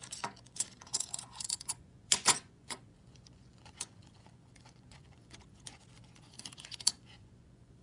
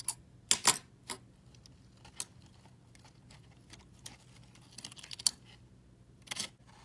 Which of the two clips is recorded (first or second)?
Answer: second